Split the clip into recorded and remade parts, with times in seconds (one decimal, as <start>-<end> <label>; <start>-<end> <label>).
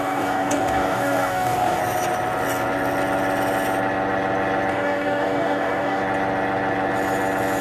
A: 0.0-1.8 remade; 1.8-4.7 recorded; 4.7-6.0 remade; 6.0-7.6 recorded